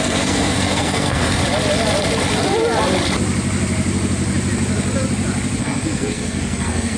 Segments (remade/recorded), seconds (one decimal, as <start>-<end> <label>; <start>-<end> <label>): 0.0-1.4 remade; 1.4-5.6 recorded; 5.6-7.0 remade